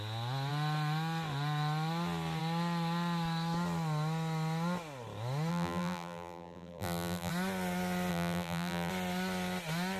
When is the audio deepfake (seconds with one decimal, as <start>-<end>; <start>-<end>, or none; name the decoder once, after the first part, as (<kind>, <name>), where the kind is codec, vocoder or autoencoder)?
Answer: 5.5-7.3 (vocoder, BigVGAN v2); 8.1-8.9